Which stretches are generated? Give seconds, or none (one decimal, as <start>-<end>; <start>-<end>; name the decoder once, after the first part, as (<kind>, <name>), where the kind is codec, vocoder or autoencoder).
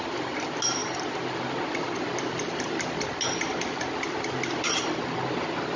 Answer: none